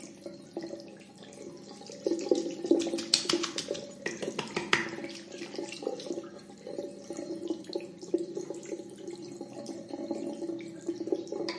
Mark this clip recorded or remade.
recorded